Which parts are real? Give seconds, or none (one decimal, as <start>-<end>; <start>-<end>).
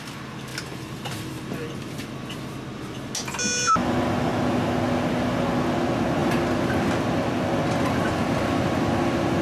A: 0.0-9.4